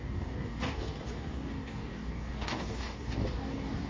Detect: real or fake fake